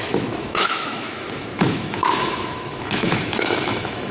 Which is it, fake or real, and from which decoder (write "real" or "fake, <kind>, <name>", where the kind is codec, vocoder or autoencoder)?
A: fake, autoencoder, DAC-VAE